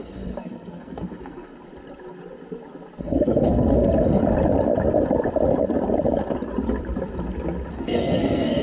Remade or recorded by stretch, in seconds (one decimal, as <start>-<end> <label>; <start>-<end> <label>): 0.0-1.5 remade; 1.5-3.0 recorded; 3.0-4.2 remade; 4.2-7.7 recorded; 7.7-8.6 remade